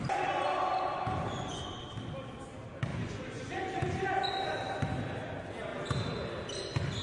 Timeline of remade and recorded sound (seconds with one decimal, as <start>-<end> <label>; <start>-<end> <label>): 0.0-1.3 recorded; 1.3-1.8 remade; 1.8-2.9 recorded; 2.9-3.6 remade; 3.6-7.0 recorded